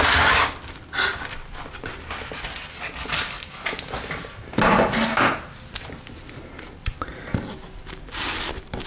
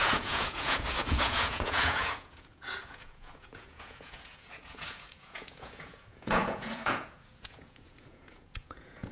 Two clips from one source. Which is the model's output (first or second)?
second